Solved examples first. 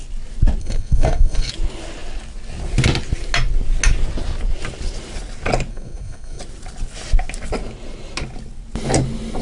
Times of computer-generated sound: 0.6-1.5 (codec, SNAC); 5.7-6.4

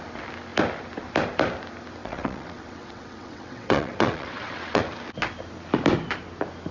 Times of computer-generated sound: 2.0-4.8 (vocoder, WaveNeXt)

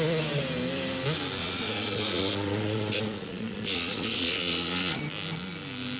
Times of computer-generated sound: 1.4-5.0 (vocoder, Vocos)

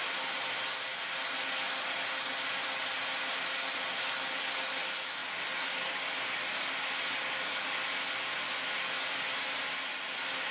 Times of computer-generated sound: none

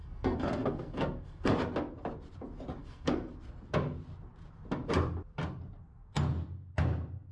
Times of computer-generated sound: 0.0-1.5 (codec, SNAC); 2.8-3.3